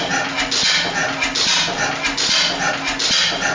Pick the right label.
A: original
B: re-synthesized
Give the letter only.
A